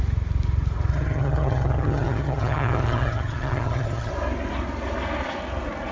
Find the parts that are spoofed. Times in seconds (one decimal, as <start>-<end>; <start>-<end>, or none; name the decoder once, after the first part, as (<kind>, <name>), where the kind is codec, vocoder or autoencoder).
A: 0.9-4.1 (vocoder, HiFi-GAN)